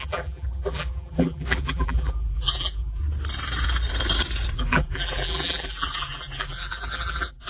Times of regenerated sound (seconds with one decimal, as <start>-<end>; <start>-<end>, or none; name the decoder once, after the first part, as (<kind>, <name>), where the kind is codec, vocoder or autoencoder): 0.0-3.0 (vocoder, BigVGAN v2); 4.5-7.5